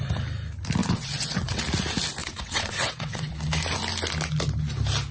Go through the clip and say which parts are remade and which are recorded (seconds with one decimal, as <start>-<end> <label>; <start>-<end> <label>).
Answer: 0.0-0.8 recorded; 0.8-1.6 remade; 1.6-2.2 recorded; 2.2-3.3 remade; 3.3-5.1 recorded